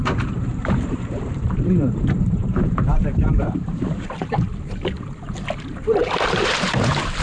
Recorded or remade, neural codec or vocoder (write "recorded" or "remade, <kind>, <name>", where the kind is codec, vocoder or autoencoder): remade, vocoder, BigVGAN v2